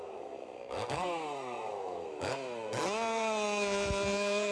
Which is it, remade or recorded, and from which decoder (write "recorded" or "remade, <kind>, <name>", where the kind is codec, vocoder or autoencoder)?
remade, codec, SNAC